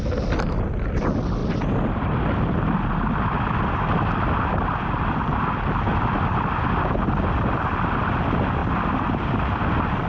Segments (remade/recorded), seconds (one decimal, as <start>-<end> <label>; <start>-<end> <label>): 0.0-10.1 recorded